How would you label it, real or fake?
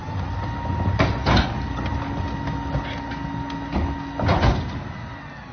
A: real